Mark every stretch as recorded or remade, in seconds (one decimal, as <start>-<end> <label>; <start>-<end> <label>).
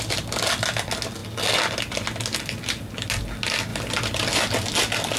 0.0-5.2 recorded